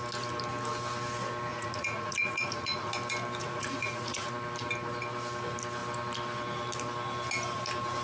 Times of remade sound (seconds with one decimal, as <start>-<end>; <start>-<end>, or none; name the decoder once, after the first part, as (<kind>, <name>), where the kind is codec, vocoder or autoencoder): 1.5-2.9 (vocoder, Vocos); 3.4-4.3